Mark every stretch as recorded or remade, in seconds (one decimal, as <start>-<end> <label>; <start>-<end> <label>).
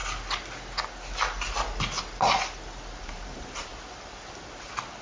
0.0-3.0 recorded; 3.0-3.7 remade; 3.7-5.0 recorded